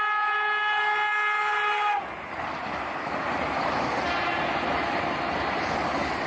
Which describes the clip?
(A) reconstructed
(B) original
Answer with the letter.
B